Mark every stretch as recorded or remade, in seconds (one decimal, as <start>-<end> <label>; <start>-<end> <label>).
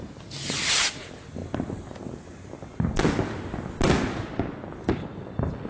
0.0-5.7 recorded